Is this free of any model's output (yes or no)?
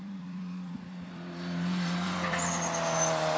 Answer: no